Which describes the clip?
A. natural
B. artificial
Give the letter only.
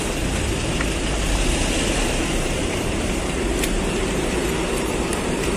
B